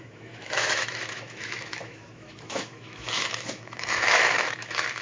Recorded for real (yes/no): no